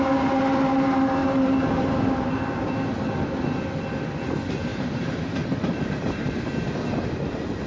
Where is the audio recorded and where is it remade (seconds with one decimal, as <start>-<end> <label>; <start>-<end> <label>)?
0.0-1.2 recorded; 1.2-2.9 remade; 2.9-4.7 recorded; 4.7-6.4 remade; 6.4-7.7 recorded